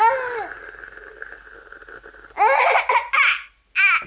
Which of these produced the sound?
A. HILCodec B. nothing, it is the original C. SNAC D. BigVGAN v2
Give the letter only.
B